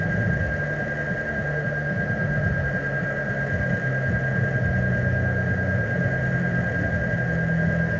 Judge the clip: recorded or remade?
recorded